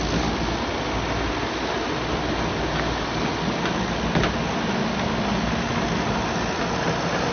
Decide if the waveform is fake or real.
real